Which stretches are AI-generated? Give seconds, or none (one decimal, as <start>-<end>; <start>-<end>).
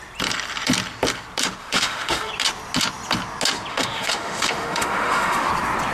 1.6-2.3; 3.7-5.5